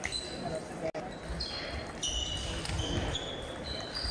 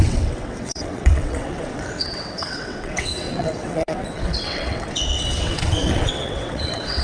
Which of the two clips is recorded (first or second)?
first